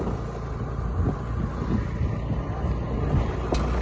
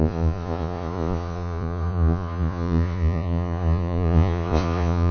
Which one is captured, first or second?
first